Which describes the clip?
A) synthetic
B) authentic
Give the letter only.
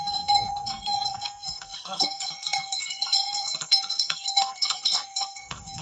A